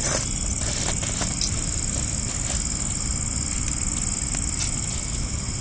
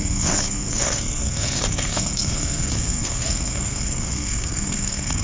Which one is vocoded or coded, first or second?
second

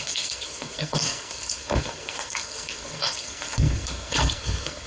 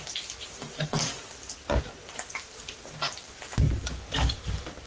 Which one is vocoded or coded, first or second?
first